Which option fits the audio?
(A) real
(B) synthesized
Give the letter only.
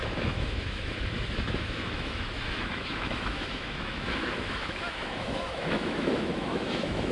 B